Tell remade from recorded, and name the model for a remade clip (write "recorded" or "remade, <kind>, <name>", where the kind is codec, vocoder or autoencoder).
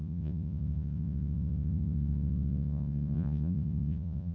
remade, vocoder, Vocos